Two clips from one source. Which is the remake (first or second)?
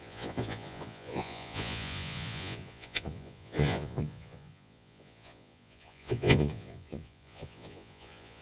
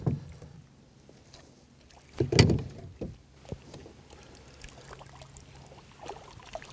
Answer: first